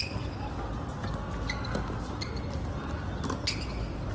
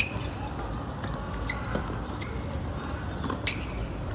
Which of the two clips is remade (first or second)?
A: second